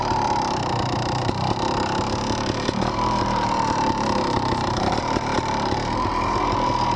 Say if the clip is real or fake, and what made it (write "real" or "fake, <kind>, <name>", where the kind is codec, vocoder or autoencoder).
fake, vocoder, BigVGAN v2